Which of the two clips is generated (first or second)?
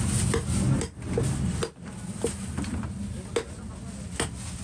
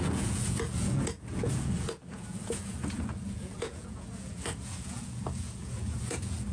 second